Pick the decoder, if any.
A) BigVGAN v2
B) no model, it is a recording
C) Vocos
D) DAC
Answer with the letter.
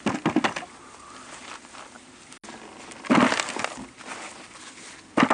B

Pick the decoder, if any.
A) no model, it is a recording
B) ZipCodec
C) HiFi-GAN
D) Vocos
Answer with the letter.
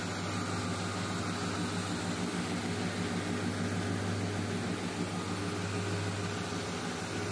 A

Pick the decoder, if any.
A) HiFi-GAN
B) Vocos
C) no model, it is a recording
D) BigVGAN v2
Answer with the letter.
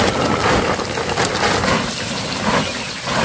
C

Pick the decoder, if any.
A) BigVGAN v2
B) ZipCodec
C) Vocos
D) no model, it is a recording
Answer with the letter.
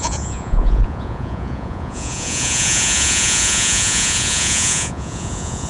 C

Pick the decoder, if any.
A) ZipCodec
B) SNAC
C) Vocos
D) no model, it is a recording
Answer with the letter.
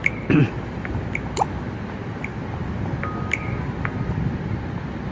D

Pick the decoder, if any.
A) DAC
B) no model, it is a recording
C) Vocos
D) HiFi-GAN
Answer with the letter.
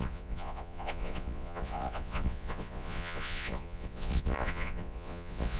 C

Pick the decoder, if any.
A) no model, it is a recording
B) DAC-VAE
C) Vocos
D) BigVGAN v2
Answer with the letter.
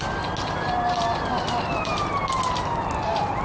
A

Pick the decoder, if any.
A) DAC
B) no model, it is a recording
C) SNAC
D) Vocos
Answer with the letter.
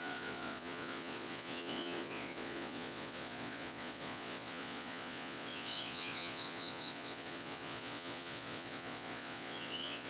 D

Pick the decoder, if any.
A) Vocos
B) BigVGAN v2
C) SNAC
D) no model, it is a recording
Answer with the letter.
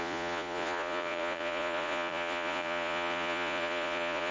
A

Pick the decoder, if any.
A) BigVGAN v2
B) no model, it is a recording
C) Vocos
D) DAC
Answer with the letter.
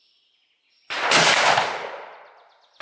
B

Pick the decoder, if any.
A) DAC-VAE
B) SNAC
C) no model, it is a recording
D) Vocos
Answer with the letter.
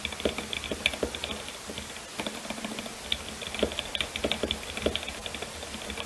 C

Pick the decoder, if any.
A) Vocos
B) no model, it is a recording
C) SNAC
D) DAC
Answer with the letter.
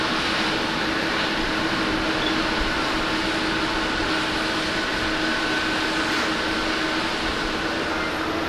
B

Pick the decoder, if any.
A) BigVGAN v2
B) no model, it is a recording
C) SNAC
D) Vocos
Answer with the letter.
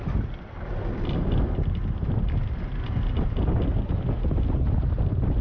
B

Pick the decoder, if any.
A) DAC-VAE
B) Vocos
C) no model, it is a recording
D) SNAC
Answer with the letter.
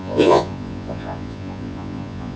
B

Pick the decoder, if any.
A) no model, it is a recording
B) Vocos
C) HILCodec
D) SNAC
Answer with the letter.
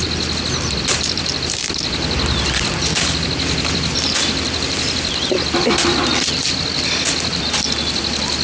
A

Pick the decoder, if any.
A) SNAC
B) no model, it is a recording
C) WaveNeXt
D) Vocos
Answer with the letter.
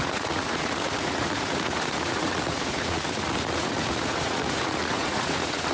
D